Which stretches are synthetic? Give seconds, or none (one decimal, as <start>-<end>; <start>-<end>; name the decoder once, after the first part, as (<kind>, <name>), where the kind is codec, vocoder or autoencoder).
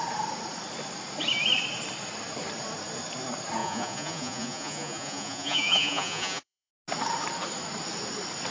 3.6-6.7 (vocoder, Vocos)